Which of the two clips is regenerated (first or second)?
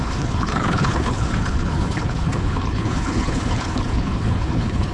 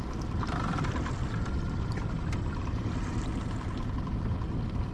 first